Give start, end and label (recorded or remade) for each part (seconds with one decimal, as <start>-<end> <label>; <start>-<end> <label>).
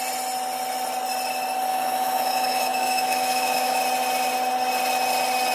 0.0-1.7 recorded; 1.7-3.8 remade; 3.8-5.5 recorded